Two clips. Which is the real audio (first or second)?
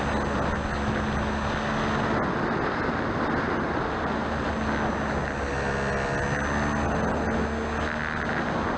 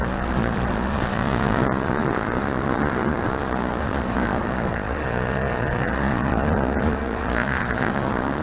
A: first